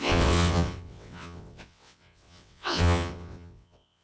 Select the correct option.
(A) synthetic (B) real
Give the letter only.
A